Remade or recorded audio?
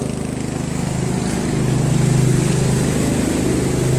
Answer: recorded